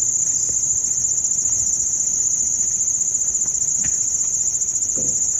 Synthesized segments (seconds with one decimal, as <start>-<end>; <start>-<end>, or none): none